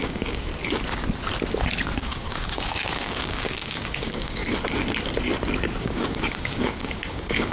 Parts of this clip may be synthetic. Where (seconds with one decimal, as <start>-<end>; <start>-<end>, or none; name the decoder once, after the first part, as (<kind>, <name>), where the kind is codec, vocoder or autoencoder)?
0.0-0.5 (codec, DAC); 2.0-4.4; 5.8-7.5

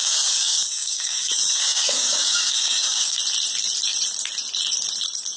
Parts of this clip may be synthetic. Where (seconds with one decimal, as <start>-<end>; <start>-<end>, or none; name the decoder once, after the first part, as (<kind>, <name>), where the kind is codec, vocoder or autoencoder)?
0.0-3.2 (codec, DAC)